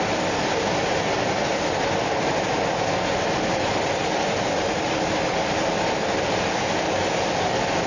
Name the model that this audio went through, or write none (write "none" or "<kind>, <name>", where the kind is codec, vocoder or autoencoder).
none